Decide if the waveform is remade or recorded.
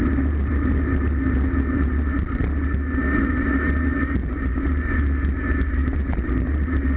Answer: recorded